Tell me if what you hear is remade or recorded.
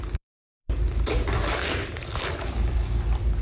remade